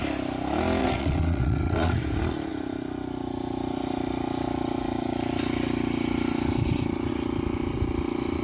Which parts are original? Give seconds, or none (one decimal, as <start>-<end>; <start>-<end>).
0.0-0.8; 2.0-8.4